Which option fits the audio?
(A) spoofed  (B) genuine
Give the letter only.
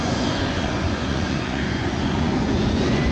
A